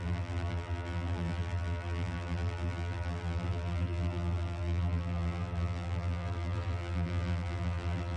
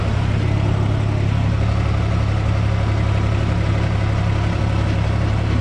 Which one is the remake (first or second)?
first